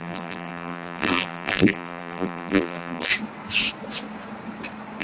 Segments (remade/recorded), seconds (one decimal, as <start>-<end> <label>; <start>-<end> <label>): 0.0-3.1 remade; 3.1-5.0 recorded